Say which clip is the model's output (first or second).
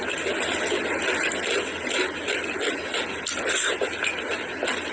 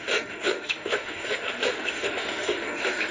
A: second